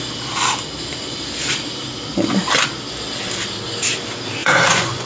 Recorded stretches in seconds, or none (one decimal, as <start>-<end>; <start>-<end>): 0.0-4.4